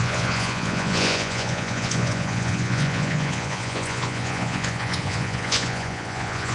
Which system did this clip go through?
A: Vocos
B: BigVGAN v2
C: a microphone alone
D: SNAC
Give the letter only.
A